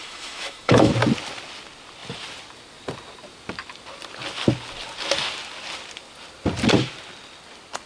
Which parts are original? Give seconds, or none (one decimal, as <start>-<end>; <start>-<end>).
0.9-7.9

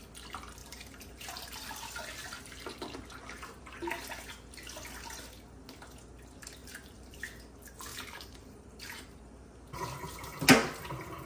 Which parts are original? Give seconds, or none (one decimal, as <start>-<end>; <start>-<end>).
0.0-0.6; 1.7-6.6; 7.2-7.9; 9.2-11.3

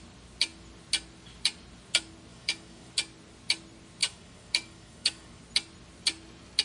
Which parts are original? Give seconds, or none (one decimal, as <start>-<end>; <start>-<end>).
0.0-2.3; 2.9-4.0; 5.4-6.6

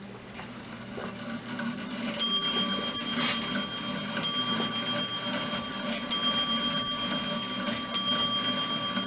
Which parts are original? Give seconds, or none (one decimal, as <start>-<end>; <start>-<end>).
0.0-9.1

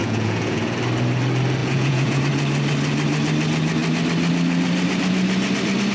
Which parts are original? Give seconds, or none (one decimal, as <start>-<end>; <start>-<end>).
0.6-1.6; 2.2-5.9

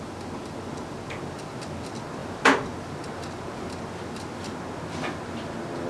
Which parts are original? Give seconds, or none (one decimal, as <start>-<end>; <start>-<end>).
0.0-5.9